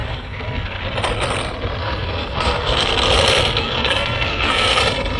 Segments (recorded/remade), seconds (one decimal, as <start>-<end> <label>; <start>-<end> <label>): 0.0-0.8 remade; 0.8-1.8 recorded; 1.8-2.9 remade; 2.9-3.6 recorded; 3.6-4.8 remade; 4.8-5.2 recorded